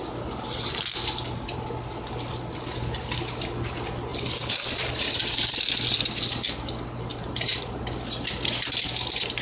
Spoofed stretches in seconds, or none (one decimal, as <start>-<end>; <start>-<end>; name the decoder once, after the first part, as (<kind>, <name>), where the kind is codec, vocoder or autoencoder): 4.1-5.5 (vocoder, BigVGAN v2); 7.1-7.8